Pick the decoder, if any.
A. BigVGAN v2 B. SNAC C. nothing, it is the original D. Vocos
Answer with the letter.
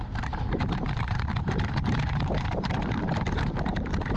A